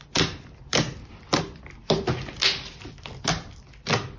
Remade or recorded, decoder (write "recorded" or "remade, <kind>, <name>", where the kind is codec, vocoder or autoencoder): recorded